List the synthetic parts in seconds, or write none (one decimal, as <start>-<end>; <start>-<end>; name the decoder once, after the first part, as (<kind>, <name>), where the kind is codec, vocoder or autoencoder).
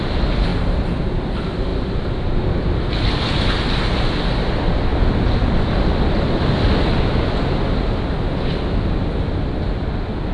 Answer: none